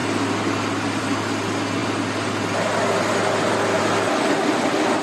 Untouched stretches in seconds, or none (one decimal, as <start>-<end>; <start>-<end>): 0.0-5.0